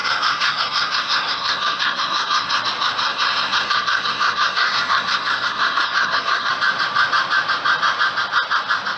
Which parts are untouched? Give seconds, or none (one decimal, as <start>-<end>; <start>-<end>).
2.6-3.0; 6.5-9.0